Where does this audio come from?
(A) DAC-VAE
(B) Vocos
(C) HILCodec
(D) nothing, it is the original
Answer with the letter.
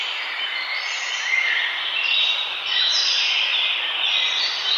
D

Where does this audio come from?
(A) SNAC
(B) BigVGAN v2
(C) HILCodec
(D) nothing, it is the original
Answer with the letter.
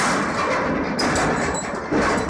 D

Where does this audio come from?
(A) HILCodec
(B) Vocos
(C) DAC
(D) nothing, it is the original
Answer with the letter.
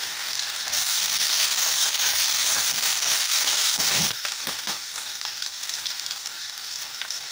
C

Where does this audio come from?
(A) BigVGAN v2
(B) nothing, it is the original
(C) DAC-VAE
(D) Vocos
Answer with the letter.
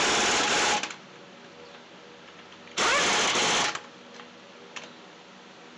B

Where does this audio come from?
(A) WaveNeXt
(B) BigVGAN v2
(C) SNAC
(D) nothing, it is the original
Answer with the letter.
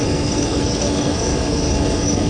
C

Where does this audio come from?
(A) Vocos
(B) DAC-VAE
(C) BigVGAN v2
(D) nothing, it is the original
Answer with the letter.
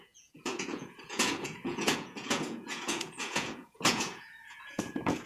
A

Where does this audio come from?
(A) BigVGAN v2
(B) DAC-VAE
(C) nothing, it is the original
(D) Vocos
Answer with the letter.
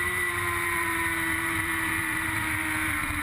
A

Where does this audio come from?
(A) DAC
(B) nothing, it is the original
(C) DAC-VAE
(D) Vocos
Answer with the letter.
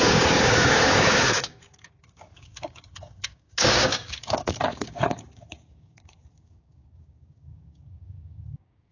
A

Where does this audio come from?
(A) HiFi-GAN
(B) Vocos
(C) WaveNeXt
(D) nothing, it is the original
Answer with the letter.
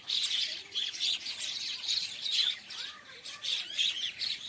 B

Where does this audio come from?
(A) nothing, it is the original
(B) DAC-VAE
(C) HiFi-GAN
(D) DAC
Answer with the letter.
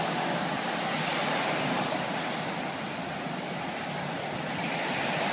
A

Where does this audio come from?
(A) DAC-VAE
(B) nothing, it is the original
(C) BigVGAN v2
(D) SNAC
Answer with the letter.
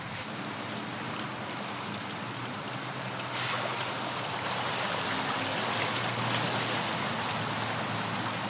B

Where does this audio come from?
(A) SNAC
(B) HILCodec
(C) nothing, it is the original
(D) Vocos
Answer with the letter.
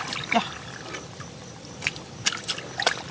C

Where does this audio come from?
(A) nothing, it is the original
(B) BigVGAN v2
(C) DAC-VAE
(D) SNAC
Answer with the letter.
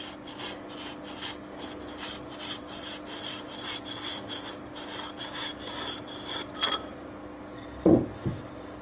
A